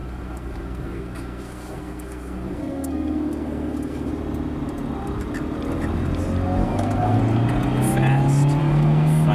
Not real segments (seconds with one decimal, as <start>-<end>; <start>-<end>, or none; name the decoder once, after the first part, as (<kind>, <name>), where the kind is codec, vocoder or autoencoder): 0.0-4.1 (codec, SNAC); 6.6-7.2; 8.6-9.3